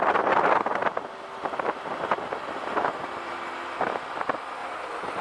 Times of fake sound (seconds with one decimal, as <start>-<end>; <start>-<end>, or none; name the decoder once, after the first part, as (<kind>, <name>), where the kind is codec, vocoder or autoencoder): none